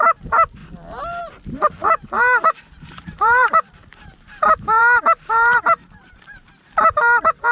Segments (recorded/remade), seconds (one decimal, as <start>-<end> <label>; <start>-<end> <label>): 0.0-0.6 remade; 0.6-1.2 recorded; 1.2-7.5 remade